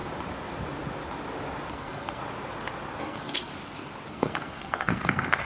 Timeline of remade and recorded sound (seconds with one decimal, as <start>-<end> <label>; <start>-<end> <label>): 0.0-1.7 recorded; 1.7-2.2 remade; 2.2-3.0 recorded; 3.0-3.5 remade; 3.5-4.1 recorded; 4.1-5.4 remade